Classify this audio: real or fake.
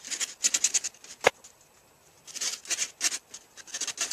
real